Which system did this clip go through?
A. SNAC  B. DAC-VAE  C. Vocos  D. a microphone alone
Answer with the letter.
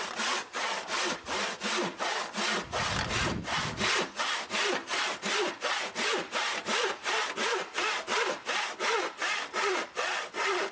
D